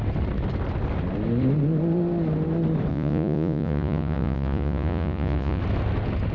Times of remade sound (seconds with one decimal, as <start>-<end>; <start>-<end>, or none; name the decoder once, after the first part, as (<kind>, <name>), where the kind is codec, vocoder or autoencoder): 2.9-5.6 (vocoder, Vocos)